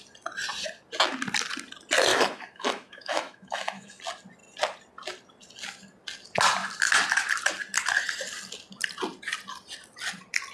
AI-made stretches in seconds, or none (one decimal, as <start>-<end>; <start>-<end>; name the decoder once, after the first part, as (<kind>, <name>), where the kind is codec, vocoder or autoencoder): 2.1-4.0 (autoencoder, DAC-VAE)